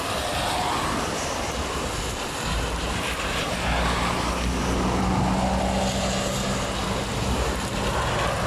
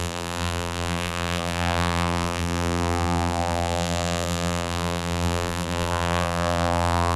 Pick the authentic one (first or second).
first